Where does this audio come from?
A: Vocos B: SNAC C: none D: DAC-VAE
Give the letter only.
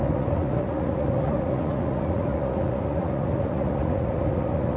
A